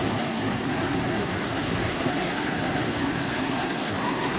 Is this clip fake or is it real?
fake